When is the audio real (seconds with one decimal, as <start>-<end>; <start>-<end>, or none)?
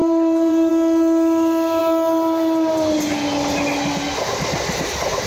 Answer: 0.7-5.3